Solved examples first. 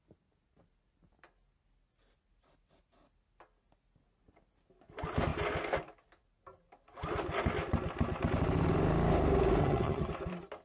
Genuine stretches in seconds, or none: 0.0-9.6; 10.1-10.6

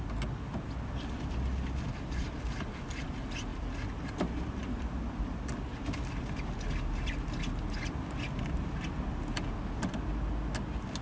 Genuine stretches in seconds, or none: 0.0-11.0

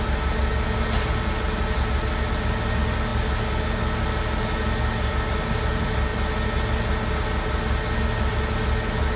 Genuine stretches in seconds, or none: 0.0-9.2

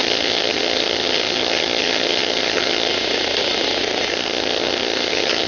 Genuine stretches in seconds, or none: 2.9-4.1

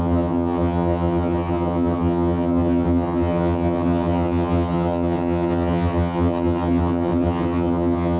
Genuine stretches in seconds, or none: none